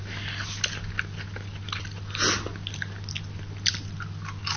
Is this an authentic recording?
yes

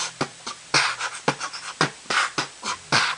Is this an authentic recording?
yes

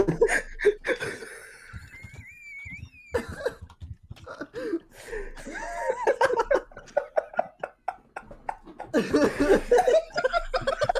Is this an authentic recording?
yes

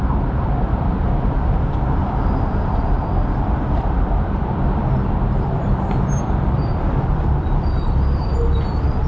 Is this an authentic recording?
no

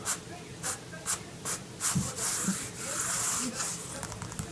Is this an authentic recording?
yes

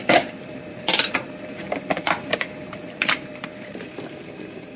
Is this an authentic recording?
no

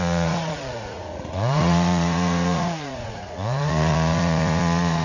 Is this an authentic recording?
no